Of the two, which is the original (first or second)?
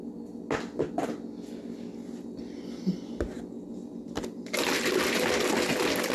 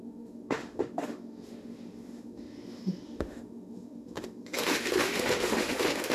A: first